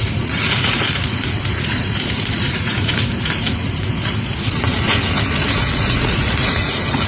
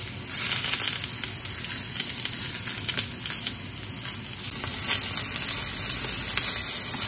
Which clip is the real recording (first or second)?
second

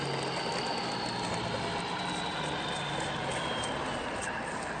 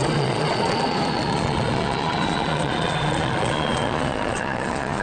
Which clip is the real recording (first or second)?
first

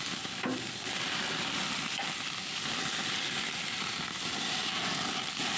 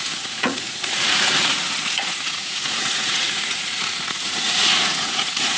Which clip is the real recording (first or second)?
first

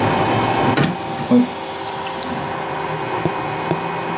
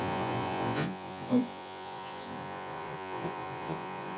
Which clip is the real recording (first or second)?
first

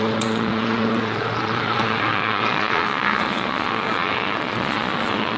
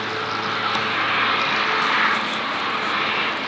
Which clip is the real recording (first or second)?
second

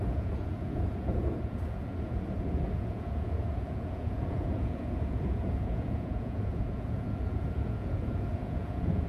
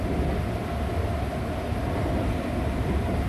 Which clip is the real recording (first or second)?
second